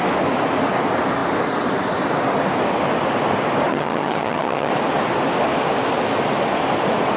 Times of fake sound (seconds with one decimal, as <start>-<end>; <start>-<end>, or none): 3.7-4.7